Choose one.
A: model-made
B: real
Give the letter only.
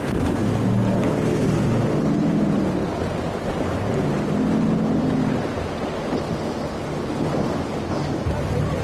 B